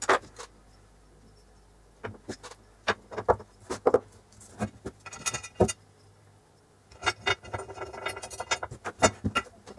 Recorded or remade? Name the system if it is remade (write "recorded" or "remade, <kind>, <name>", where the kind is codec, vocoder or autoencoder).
recorded